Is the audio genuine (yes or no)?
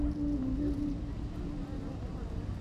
yes